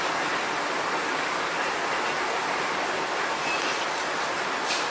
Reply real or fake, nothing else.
real